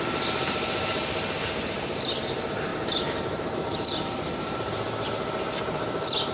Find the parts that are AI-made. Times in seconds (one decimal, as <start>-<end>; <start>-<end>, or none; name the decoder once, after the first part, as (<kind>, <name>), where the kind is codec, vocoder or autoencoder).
0.0-6.3 (vocoder, BigVGAN v2)